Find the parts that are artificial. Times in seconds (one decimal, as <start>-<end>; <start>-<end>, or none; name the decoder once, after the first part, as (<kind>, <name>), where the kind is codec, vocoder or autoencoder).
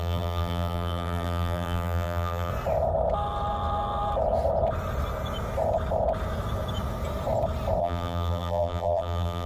0.0-2.5 (vocoder, BigVGAN v2); 7.8-9.5